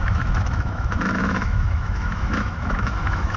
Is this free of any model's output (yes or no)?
no